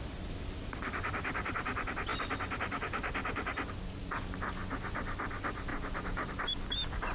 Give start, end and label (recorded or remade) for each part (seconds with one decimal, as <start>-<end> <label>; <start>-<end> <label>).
0.0-2.1 remade; 2.1-4.0 recorded; 4.0-4.6 remade; 4.6-5.2 recorded; 5.2-5.7 remade; 5.7-6.3 recorded; 6.3-7.1 remade